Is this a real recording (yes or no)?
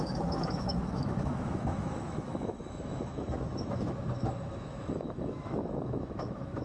no